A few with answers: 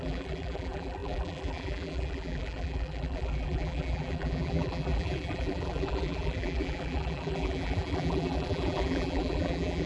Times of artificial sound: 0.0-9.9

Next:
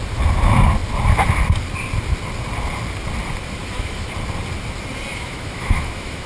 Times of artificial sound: 3.6-4.1; 5.1-6.3

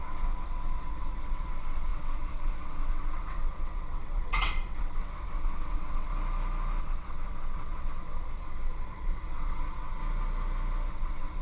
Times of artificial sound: 0.0-6.1; 6.8-10.0; 10.9-11.4

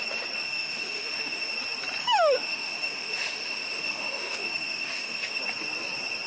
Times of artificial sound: 0.4-1.5; 2.0-5.4

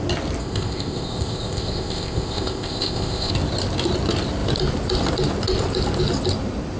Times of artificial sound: 0.4-3.3

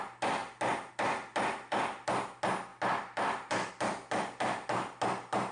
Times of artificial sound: none